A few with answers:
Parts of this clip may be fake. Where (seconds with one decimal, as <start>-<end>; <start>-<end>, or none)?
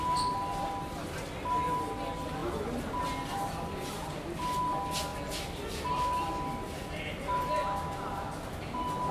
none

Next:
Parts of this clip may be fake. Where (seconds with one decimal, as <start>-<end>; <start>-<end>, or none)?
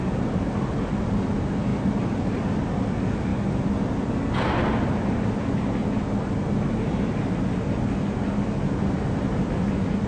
none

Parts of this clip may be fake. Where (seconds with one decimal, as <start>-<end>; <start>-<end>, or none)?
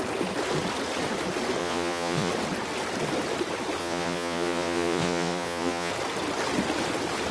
1.6-2.3; 3.8-5.9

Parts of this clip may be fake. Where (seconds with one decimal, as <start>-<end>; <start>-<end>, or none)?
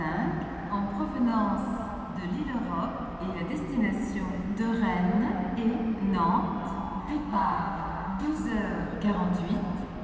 7.0-8.4